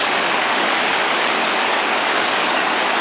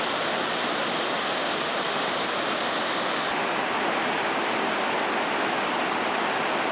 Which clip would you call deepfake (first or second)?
first